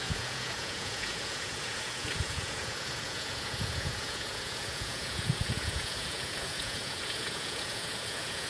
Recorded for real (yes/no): no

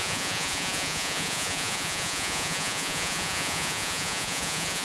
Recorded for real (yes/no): no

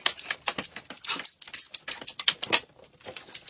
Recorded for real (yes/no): yes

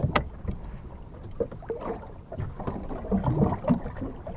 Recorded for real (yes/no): yes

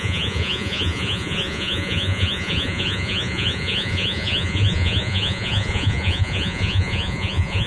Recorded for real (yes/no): no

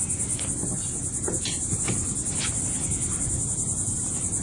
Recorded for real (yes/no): yes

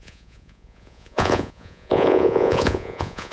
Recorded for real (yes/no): no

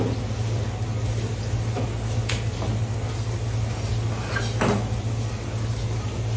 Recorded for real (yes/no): yes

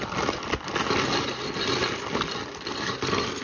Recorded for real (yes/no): yes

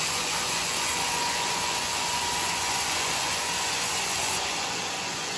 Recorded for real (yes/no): no